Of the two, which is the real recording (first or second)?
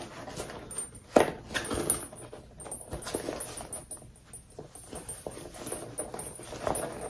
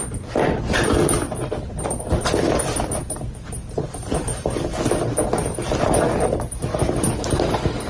first